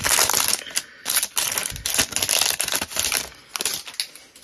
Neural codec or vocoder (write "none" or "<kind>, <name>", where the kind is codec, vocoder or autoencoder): none